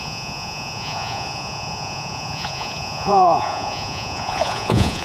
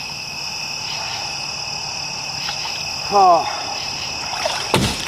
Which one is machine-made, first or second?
first